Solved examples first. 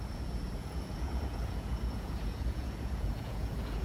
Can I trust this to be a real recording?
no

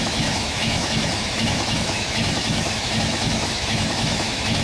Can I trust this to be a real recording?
no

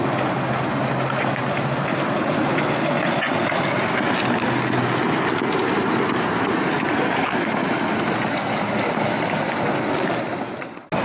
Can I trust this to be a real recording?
yes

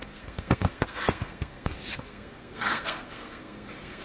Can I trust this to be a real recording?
no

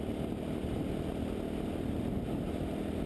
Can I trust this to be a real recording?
yes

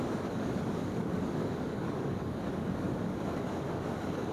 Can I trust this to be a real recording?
no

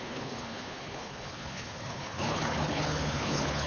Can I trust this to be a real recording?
no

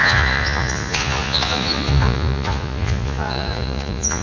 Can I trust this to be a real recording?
no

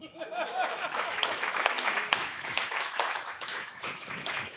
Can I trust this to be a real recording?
no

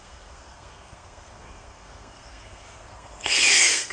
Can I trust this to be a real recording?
no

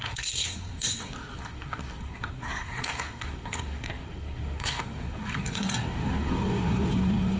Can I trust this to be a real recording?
no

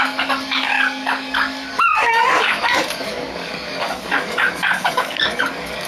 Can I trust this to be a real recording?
no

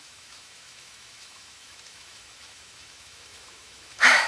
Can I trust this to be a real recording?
no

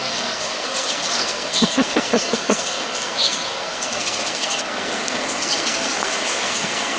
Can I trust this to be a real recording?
no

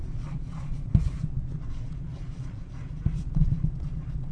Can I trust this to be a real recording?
no